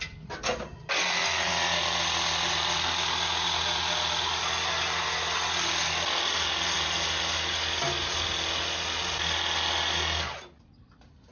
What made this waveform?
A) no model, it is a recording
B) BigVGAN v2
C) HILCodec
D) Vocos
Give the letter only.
A